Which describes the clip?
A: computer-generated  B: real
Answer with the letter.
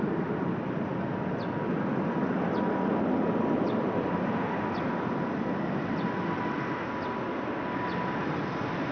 B